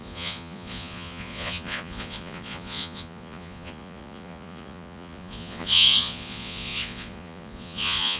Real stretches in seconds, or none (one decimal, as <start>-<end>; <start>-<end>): none